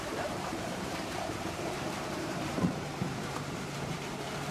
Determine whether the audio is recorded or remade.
remade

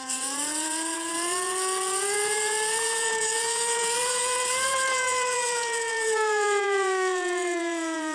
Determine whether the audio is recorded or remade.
remade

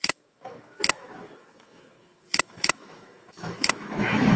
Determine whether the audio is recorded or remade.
remade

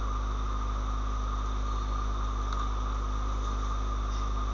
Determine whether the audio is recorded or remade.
recorded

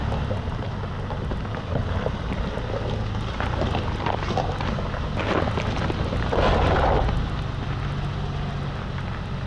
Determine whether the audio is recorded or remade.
recorded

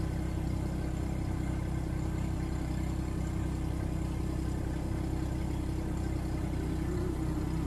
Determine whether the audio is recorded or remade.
recorded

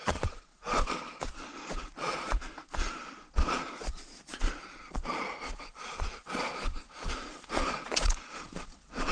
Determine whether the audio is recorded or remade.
remade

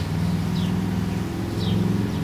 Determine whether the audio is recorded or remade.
recorded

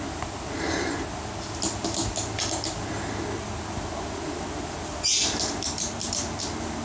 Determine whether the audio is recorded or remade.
recorded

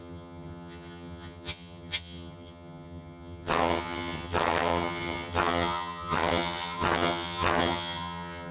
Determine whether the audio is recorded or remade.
remade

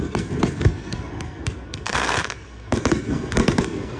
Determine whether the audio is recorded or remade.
remade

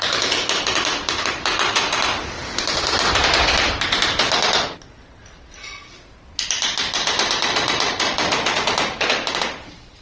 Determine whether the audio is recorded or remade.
recorded